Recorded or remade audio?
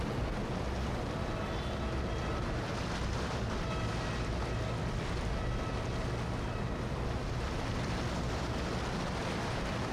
recorded